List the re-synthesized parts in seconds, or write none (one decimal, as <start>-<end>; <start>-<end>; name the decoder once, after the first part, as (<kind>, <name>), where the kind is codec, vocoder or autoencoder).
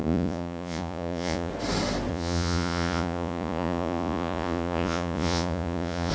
0.0-1.5 (vocoder, Vocos); 2.1-6.1